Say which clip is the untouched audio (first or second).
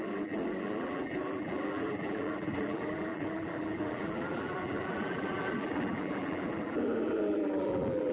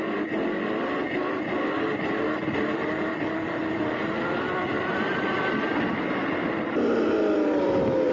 second